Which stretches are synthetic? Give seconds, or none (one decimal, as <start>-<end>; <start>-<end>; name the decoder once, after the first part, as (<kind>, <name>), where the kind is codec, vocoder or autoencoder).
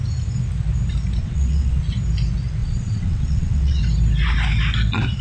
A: 1.2-1.8 (vocoder, WaveNeXt); 2.6-3.8